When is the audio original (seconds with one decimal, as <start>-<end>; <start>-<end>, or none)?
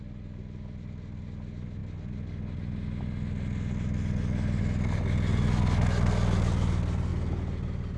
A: 0.0-8.0